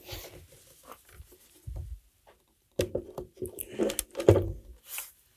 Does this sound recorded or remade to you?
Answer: recorded